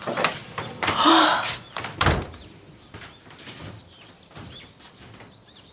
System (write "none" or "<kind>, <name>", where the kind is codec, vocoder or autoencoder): vocoder, BigVGAN v2